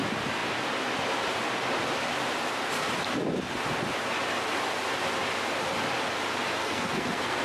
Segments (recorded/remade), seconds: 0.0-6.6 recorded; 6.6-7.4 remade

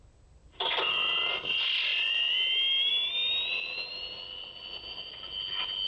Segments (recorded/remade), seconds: 0.0-5.9 recorded

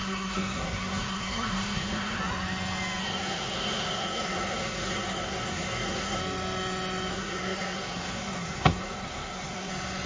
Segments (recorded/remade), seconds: 0.0-2.2 remade; 2.2-3.0 recorded; 3.0-6.2 remade; 6.2-7.1 recorded; 7.1-9.7 remade; 9.7-10.1 recorded

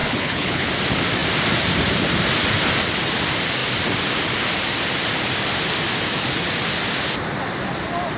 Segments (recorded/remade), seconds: 0.0-0.7 remade; 0.7-8.2 recorded